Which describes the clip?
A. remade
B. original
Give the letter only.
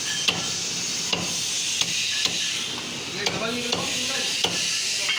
B